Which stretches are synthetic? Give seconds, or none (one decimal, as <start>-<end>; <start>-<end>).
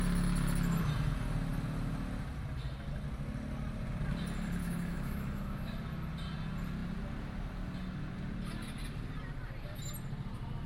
4.6-5.7